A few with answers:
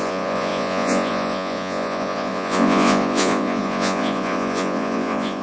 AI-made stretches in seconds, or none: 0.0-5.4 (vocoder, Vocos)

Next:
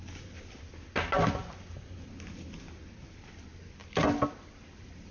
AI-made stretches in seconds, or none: none

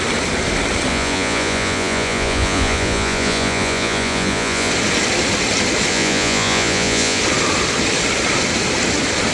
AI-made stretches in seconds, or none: 0.9-4.7 (vocoder, Vocos); 5.9-7.2